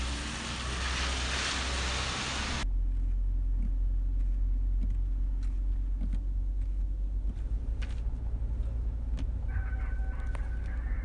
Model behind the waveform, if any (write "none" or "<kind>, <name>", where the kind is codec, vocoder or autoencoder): none